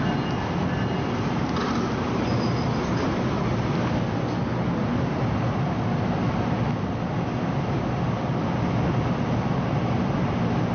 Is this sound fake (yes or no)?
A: no